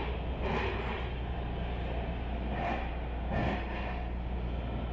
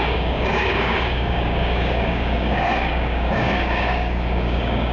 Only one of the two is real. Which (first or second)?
first